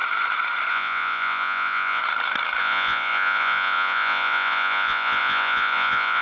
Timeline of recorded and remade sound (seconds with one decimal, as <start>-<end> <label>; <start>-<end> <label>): 0.0-0.7 recorded; 0.7-2.0 remade; 2.0-2.6 recorded; 2.6-6.2 remade